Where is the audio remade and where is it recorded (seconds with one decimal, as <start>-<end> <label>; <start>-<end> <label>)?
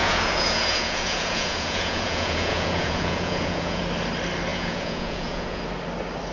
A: 0.0-3.8 remade; 3.8-4.5 recorded; 4.5-5.6 remade; 5.6-6.3 recorded